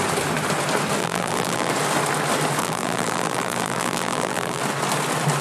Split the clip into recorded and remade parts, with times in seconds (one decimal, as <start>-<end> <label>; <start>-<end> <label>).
0.0-1.0 recorded; 1.0-1.7 remade; 1.7-2.6 recorded; 2.6-4.6 remade; 4.6-5.4 recorded